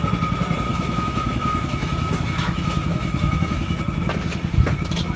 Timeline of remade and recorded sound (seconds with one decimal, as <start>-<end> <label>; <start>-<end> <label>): 0.0-0.7 recorded; 0.7-3.8 remade; 3.8-5.2 recorded